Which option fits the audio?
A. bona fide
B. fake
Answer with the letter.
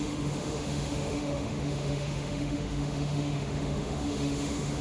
B